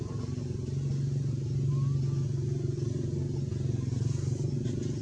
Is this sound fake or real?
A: real